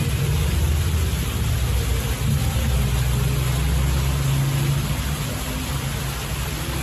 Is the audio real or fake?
real